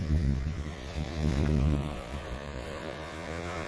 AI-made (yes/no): yes